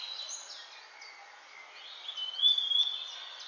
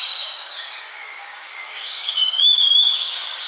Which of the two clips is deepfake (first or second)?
second